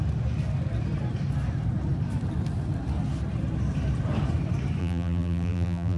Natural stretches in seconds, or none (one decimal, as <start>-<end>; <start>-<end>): 0.0-4.8